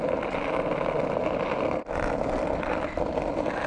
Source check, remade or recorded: remade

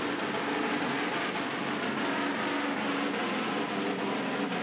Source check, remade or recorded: recorded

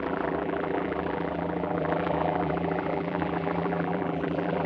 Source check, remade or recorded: remade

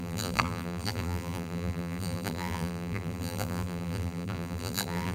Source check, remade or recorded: remade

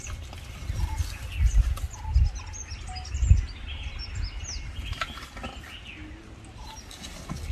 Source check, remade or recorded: recorded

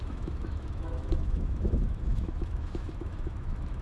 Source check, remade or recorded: remade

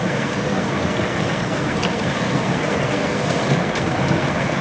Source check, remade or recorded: remade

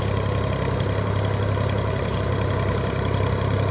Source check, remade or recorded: recorded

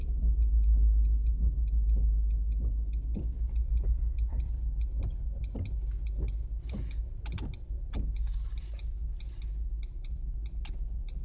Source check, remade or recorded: recorded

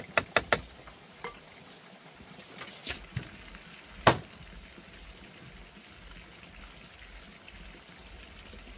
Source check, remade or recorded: recorded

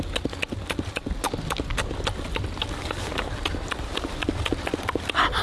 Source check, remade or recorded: recorded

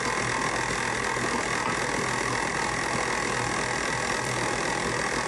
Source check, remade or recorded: recorded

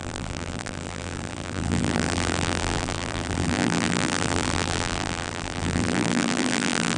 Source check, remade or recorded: remade